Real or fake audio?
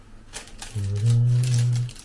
real